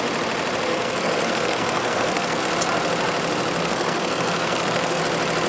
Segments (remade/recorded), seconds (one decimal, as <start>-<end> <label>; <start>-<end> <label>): 0.0-0.7 recorded; 0.7-2.4 remade; 2.4-3.6 recorded; 3.6-5.0 remade; 5.0-5.5 recorded